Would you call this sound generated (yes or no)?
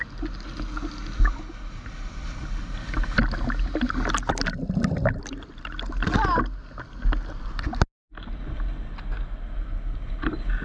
no